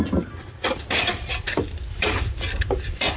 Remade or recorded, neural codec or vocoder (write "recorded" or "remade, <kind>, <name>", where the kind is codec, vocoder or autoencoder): recorded